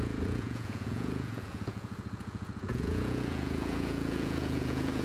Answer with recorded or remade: remade